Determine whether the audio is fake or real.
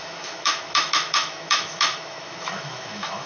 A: fake